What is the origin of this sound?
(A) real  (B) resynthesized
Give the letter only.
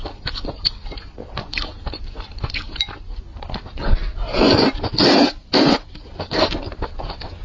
A